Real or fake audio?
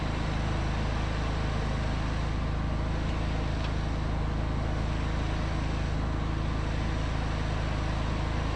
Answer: real